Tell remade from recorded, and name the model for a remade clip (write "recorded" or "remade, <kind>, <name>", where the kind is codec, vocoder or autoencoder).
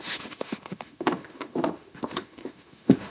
remade, autoencoder, DAC-VAE